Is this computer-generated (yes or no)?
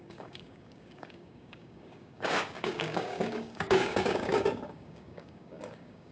yes